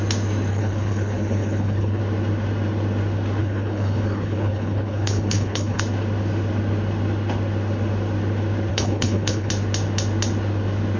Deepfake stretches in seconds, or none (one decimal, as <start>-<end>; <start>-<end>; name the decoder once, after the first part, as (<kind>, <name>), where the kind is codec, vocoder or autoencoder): 0.5-2.0 (codec, HILCodec); 3.4-5.8; 8.7-9.5